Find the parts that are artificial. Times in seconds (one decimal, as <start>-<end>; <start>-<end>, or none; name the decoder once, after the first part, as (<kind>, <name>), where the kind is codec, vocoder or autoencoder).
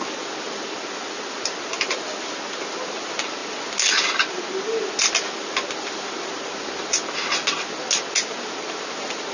none